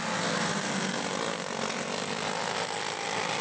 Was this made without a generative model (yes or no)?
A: yes